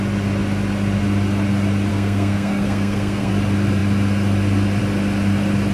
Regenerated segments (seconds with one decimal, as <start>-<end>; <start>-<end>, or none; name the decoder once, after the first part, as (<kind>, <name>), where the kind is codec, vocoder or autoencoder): 1.9-3.3 (codec, SNAC)